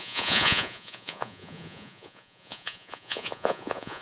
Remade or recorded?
remade